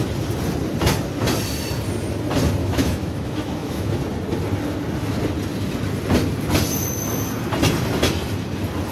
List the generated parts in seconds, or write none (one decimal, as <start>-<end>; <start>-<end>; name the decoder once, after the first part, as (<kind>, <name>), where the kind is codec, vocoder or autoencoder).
2.6-3.9 (autoencoder, DAC-VAE)